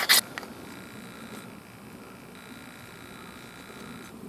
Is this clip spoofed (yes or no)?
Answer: no